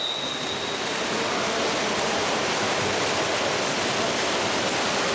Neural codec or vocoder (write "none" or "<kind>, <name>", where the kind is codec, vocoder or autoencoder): none